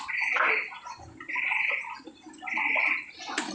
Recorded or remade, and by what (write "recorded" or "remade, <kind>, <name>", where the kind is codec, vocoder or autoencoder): recorded